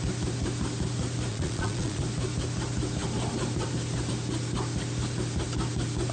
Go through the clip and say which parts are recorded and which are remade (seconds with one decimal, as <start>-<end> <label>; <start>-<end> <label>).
0.0-1.3 recorded; 1.3-2.0 remade; 2.0-6.1 recorded